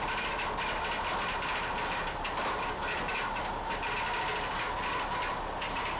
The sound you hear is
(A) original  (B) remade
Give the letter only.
A